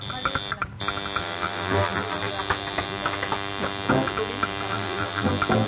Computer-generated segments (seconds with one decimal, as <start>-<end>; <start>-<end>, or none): 1.2-2.3; 4.7-5.3